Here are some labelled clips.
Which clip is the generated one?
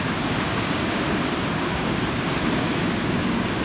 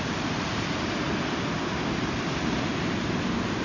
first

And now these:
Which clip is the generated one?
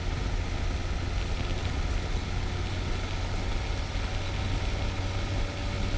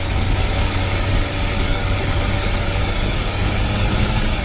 second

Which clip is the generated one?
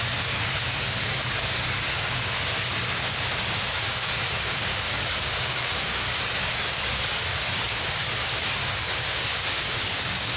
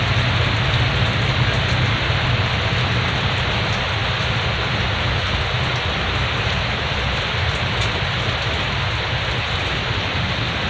first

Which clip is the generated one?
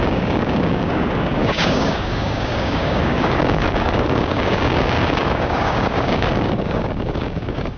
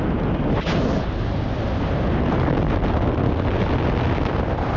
first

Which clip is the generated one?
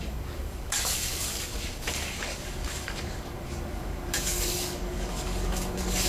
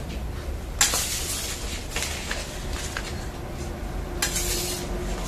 first